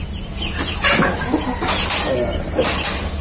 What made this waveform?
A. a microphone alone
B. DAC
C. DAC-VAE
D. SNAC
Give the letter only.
A